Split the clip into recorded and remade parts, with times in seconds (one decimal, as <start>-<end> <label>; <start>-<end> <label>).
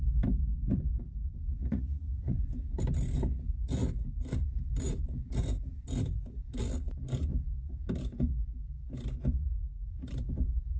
0.0-1.6 recorded; 1.6-2.3 remade; 2.3-9.4 recorded; 9.4-10.0 remade; 10.0-10.8 recorded